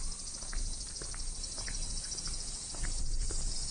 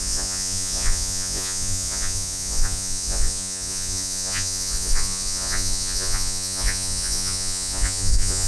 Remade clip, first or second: second